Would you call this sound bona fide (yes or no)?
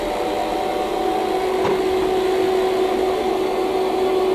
yes